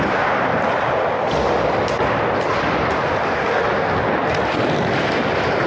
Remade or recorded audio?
recorded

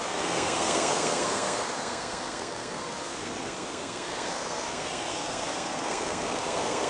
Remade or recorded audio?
remade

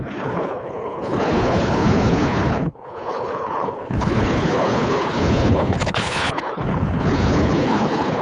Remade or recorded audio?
remade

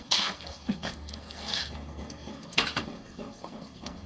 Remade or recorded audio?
remade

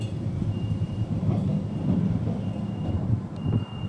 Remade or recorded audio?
recorded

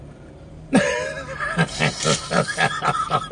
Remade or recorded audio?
recorded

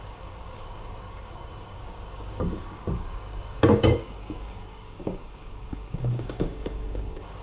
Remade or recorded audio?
remade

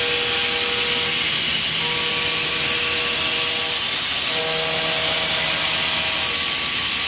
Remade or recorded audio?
recorded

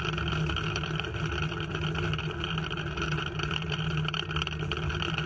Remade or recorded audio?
recorded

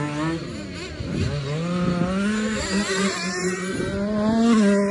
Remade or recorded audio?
recorded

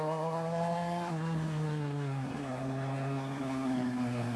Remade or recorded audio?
remade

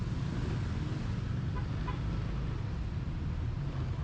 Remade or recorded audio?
recorded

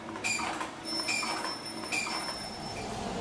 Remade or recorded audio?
recorded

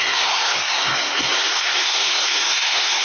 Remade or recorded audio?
remade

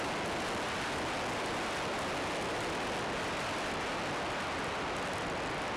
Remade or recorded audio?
recorded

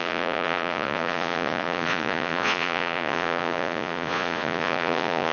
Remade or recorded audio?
remade